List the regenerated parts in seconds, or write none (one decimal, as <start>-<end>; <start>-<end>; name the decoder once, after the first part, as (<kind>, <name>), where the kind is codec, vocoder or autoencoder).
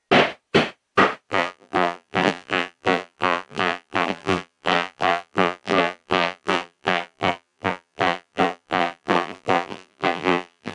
1.3-10.7 (vocoder, BigVGAN v2)